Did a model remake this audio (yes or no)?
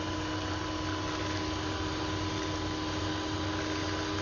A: no